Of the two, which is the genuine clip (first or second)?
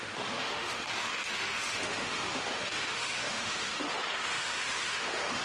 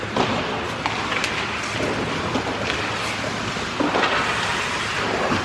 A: second